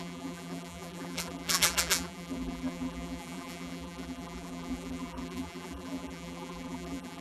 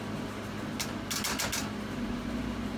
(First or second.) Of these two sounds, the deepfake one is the first